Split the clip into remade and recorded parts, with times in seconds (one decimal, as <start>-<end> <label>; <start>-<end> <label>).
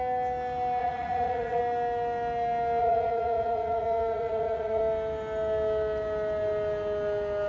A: 0.0-0.8 recorded; 0.8-1.6 remade; 1.6-2.8 recorded; 2.8-4.8 remade; 4.8-7.5 recorded